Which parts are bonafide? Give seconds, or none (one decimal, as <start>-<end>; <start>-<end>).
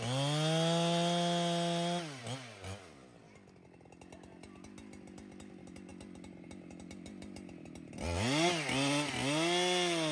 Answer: 0.0-10.1